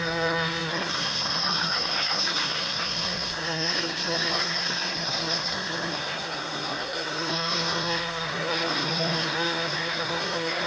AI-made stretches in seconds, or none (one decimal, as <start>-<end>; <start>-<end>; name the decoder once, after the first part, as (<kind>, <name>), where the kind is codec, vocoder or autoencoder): 0.0-10.7 (codec, SNAC)